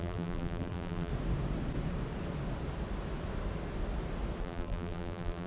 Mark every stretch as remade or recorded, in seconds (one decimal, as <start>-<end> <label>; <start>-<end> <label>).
0.0-1.1 remade; 1.1-4.4 recorded; 4.4-5.5 remade